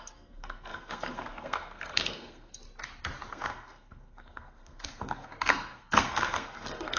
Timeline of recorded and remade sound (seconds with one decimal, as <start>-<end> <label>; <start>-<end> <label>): 0.0-2.6 remade; 2.6-3.3 recorded; 3.3-7.0 remade

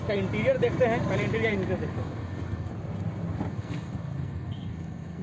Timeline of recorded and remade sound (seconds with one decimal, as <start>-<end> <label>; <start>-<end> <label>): 0.0-1.9 recorded; 1.9-2.7 remade; 2.7-3.5 recorded; 3.5-5.2 remade

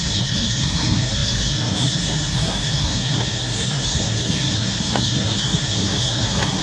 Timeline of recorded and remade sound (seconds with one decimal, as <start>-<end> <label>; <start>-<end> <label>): 0.0-6.6 remade